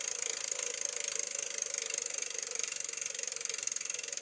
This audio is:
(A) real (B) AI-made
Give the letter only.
A